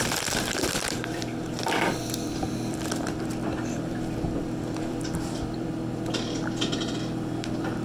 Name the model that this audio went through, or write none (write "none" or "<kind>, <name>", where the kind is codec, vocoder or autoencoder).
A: vocoder, BigVGAN v2